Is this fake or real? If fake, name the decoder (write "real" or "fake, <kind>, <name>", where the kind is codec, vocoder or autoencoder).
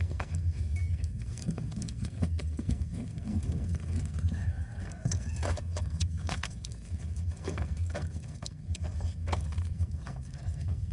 fake, codec, SNAC